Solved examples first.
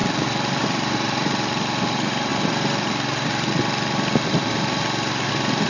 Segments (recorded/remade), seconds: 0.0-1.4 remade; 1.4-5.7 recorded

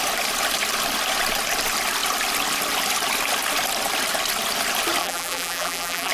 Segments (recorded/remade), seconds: 0.0-5.0 recorded; 5.0-6.1 remade

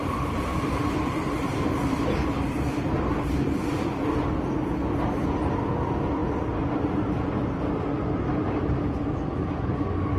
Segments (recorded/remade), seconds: 0.0-0.5 recorded; 0.5-4.4 remade; 4.4-10.2 recorded

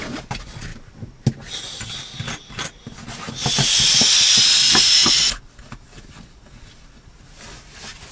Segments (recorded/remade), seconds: 0.0-8.1 recorded

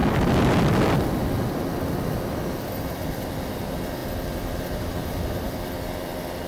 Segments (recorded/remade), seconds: 0.0-2.0 recorded; 2.0-4.0 remade; 4.0-4.9 recorded; 4.9-6.5 remade

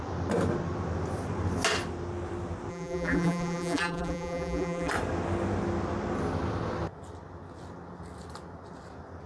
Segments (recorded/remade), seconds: 0.0-2.7 recorded; 2.7-4.9 remade; 4.9-9.3 recorded

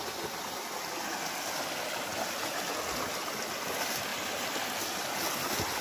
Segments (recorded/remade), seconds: 0.0-2.1 remade; 2.1-2.6 recorded; 2.6-4.1 remade; 4.1-4.9 recorded; 4.9-5.8 remade

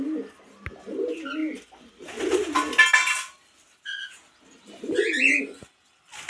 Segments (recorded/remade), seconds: 0.0-1.4 recorded; 1.4-1.9 remade; 1.9-3.0 recorded; 3.0-5.1 remade; 5.1-6.3 recorded